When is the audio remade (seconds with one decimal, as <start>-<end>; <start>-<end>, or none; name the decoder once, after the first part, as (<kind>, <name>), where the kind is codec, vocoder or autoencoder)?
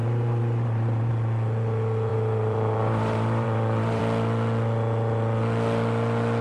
0.0-1.1 (vocoder, BigVGAN v2); 2.1-4.0